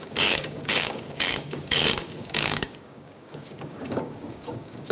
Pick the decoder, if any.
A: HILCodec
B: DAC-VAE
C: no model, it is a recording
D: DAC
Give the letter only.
D